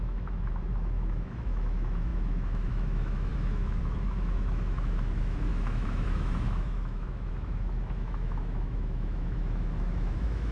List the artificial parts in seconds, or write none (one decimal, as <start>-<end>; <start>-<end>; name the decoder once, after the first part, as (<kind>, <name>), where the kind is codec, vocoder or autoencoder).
0.0-10.5 (autoencoder, DAC-VAE)